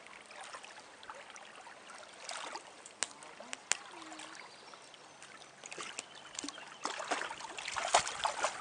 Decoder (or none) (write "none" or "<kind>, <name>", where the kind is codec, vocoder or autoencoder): none